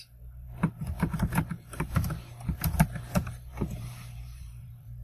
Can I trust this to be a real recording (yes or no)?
no